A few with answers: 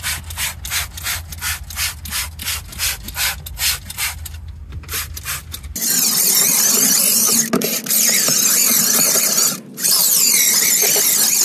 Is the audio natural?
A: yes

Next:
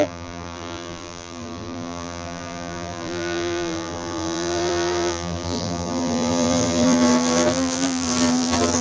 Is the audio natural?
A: no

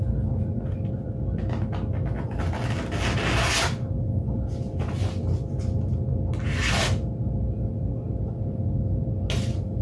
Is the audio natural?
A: yes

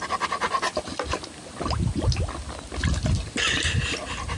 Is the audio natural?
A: yes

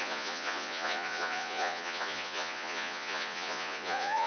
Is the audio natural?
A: no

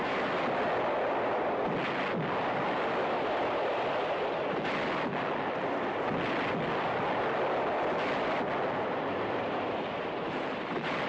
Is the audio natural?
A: yes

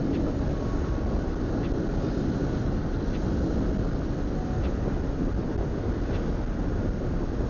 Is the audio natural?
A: yes